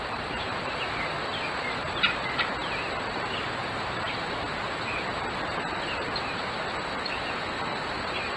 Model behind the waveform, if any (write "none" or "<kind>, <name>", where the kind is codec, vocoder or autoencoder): vocoder, BigVGAN v2